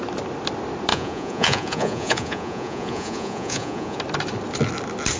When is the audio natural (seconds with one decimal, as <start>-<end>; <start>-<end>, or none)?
0.0-0.9; 4.0-5.2